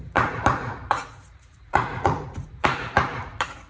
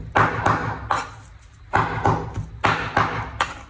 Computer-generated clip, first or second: first